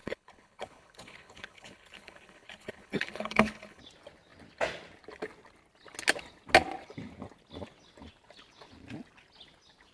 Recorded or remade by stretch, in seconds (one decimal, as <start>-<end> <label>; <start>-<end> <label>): 0.0-3.8 remade; 3.8-9.9 recorded